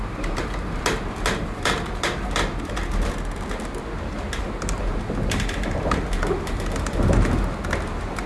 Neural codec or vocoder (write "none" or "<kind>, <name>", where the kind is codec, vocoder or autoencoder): none